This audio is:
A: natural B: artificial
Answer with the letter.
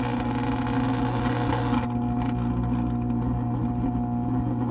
A